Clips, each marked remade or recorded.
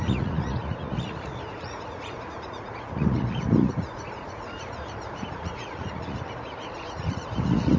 remade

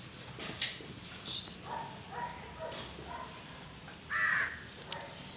recorded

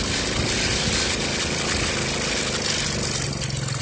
recorded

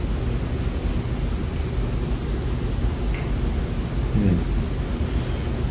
recorded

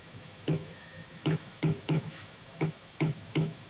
remade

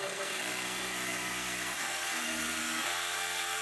remade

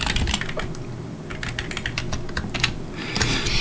recorded